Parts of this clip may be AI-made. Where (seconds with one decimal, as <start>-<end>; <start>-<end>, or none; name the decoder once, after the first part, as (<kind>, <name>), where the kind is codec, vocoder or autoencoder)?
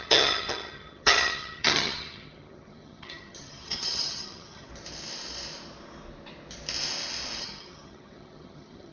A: 0.0-4.7 (vocoder, HiFi-GAN); 7.4-8.9